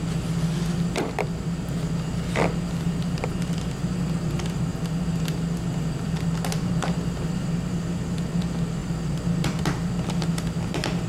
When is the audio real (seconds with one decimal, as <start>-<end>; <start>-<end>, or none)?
0.0-11.1